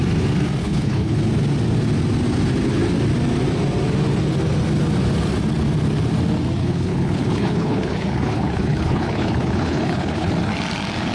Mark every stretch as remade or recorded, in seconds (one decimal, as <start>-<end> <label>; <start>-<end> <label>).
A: 0.0-0.6 recorded; 0.6-1.2 remade; 1.2-6.6 recorded; 6.6-10.3 remade; 10.3-11.1 recorded